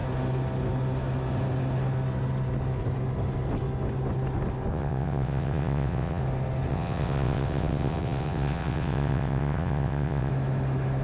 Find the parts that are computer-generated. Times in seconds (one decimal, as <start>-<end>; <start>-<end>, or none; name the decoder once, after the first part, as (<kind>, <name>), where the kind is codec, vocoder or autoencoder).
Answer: 4.7-6.2 (vocoder, WaveNeXt); 6.7-10.3